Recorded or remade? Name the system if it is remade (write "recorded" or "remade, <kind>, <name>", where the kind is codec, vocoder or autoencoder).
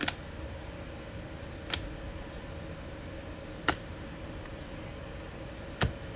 recorded